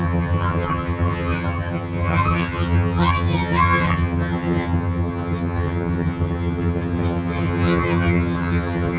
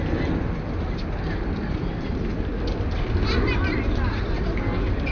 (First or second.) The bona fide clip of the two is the second